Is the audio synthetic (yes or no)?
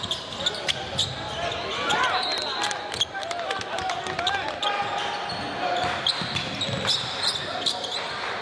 no